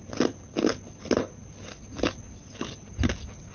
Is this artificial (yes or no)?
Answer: no